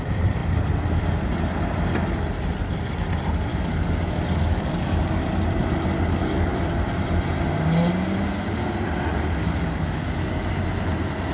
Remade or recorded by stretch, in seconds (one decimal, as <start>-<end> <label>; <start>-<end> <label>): 0.0-3.5 recorded; 3.5-5.0 remade; 5.0-9.4 recorded; 9.4-10.1 remade; 10.1-11.3 recorded